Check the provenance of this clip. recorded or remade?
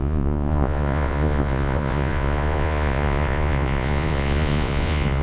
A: remade